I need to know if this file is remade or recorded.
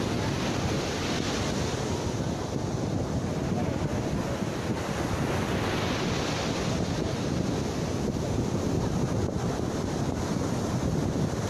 recorded